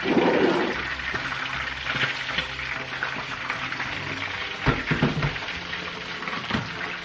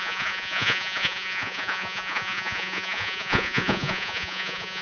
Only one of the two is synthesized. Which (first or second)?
second